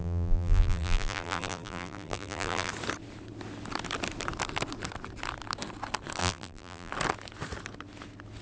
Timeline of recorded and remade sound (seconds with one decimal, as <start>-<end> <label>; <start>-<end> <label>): 0.0-2.7 remade; 2.7-6.2 recorded; 6.2-6.9 remade; 6.9-8.4 recorded